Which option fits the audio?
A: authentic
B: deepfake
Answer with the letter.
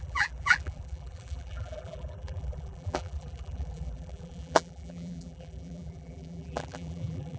B